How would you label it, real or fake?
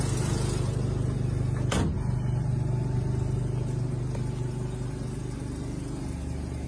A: real